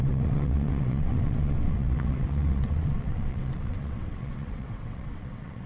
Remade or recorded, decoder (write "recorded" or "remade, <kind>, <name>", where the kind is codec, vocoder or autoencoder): remade, vocoder, WaveNeXt